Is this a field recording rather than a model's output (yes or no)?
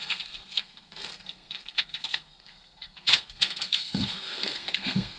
no